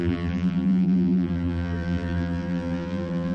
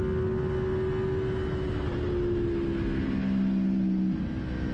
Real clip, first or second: second